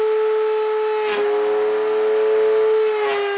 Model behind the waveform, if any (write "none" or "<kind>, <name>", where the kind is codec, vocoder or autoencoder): none